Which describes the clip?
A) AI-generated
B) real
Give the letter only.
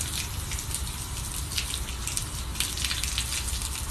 B